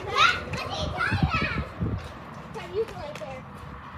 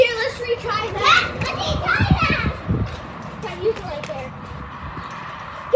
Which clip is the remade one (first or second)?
second